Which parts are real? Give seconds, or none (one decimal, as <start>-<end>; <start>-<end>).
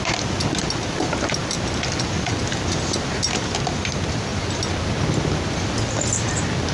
0.0-6.7